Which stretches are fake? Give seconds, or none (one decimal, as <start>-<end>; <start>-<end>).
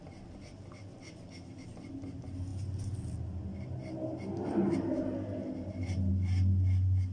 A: none